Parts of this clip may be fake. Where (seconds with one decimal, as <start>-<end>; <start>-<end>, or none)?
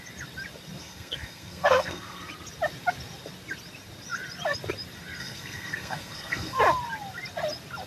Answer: 0.8-2.3; 5.2-6.6